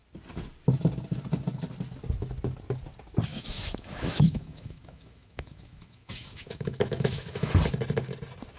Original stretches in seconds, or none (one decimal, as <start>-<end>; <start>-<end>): 0.0-3.3; 7.5-8.6